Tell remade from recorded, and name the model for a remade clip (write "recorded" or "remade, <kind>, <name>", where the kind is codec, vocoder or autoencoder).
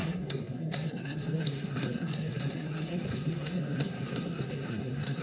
remade, codec, SNAC